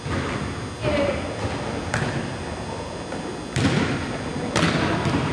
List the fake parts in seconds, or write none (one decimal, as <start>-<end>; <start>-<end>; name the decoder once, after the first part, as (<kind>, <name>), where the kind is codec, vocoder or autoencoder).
none